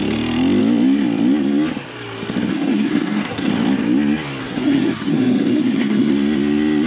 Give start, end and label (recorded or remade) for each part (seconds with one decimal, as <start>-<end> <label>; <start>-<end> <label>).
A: 0.0-2.5 recorded; 2.5-3.5 remade; 3.5-4.4 recorded; 4.4-6.1 remade; 6.1-6.9 recorded